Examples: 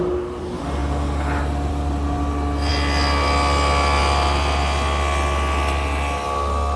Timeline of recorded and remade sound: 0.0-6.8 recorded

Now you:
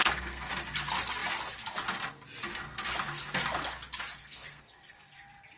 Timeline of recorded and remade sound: 0.0-0.5 remade; 0.5-4.2 recorded; 4.2-5.1 remade; 5.1-5.6 recorded

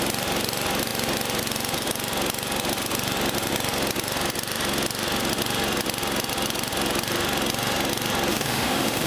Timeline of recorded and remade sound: 0.0-8.3 recorded; 8.3-9.1 remade